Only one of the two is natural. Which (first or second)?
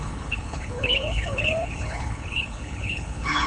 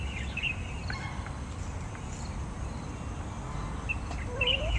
second